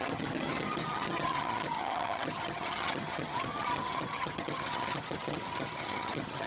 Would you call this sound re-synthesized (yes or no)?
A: yes